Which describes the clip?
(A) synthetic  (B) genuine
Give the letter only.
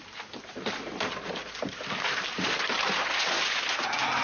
B